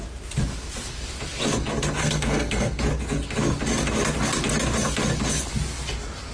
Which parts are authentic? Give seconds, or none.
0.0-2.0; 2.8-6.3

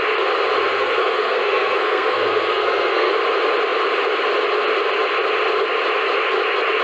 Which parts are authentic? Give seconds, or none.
0.0-0.7; 3.1-6.8